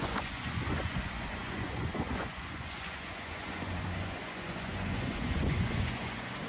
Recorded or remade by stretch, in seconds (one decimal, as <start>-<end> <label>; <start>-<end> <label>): 0.0-6.5 remade